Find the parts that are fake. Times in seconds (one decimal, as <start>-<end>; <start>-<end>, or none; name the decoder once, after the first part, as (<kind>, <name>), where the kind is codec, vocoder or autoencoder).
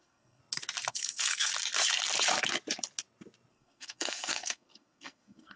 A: 0.0-0.4 (codec, SNAC); 0.9-1.5; 3.5-5.6